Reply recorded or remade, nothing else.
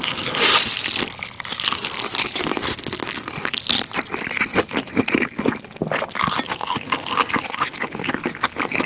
recorded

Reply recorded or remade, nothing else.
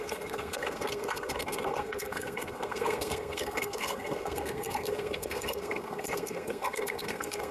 remade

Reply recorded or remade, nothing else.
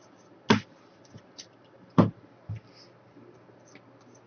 recorded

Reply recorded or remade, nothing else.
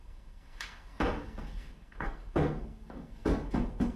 remade